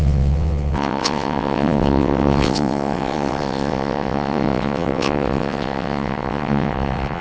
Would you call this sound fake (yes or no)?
yes